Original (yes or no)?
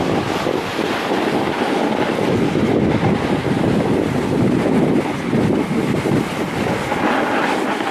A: yes